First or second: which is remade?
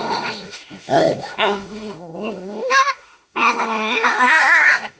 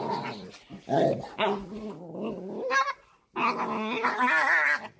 first